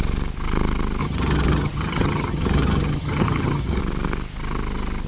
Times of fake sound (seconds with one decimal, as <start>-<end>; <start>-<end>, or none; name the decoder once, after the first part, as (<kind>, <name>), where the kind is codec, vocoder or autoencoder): 1.0-3.8 (vocoder, HiFi-GAN)